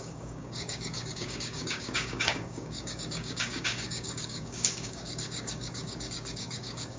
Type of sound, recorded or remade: remade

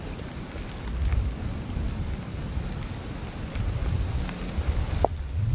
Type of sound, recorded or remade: recorded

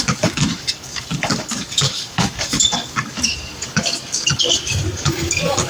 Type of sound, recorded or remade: remade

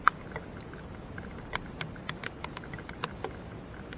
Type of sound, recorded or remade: recorded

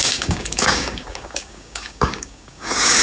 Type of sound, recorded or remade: remade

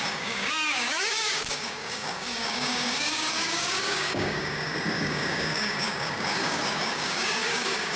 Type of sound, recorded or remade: remade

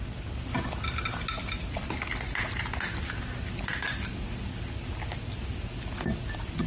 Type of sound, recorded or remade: recorded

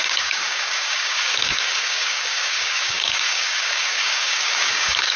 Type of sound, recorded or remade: remade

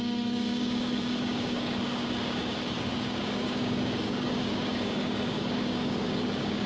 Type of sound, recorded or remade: remade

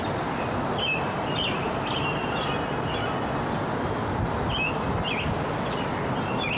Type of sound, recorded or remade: recorded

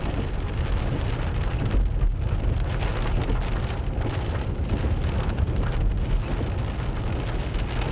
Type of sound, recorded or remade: recorded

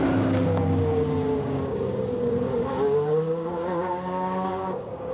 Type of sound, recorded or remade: remade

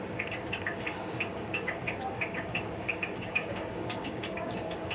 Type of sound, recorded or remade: remade